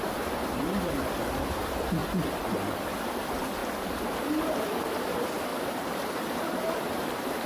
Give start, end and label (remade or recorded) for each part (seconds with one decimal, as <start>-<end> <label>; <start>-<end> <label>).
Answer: 0.0-0.4 remade; 0.4-1.3 recorded; 1.3-2.0 remade; 2.0-2.9 recorded; 2.9-3.6 remade; 3.6-4.1 recorded; 4.1-7.5 remade